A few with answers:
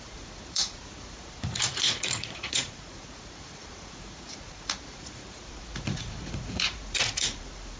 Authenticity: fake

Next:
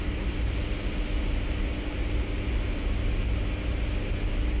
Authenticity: real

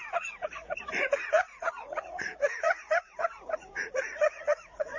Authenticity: fake